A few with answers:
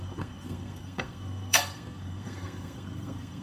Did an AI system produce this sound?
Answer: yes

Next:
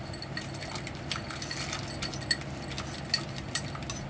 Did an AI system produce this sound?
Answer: no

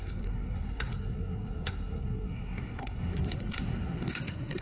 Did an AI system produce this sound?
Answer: yes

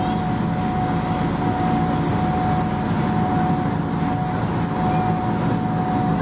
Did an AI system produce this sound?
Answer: no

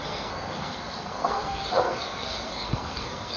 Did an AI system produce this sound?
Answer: yes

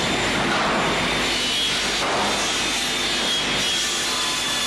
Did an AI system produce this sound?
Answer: no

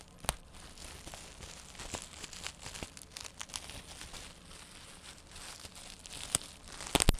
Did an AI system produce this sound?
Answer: no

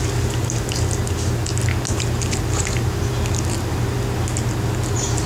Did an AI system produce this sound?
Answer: no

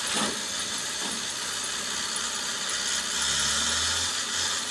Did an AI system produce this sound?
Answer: no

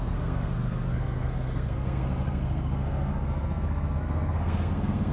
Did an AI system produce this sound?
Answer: yes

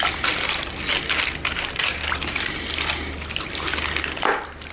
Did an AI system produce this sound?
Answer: no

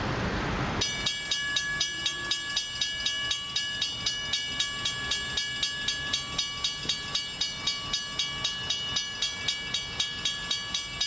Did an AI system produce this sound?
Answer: no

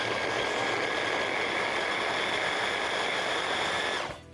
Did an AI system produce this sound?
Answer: no